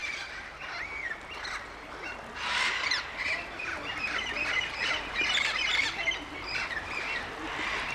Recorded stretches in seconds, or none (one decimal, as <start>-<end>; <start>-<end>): 0.0-7.9